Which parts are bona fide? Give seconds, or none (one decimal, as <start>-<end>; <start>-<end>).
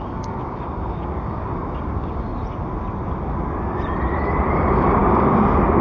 2.3-4.5